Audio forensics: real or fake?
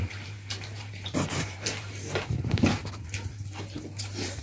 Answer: fake